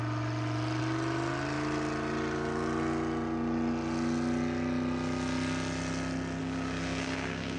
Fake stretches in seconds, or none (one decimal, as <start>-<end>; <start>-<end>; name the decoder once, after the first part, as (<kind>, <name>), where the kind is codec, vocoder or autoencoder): 6.4-7.6 (codec, SNAC)